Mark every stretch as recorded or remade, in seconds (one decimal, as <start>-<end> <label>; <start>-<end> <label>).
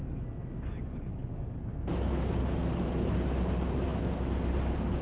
0.0-5.0 recorded